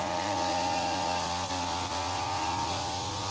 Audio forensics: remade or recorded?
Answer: remade